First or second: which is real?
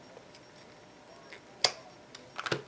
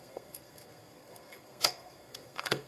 first